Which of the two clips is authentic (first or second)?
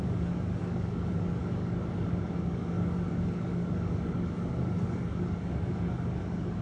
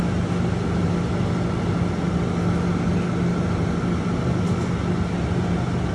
second